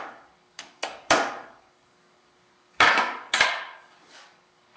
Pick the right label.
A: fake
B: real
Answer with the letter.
A